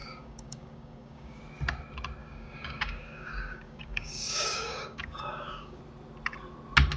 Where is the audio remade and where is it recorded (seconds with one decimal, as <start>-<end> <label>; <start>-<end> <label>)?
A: 0.0-1.4 remade; 1.4-2.2 recorded; 2.2-5.8 remade; 5.8-7.0 recorded